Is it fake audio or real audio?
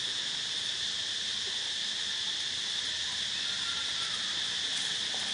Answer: real